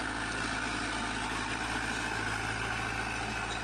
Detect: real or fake real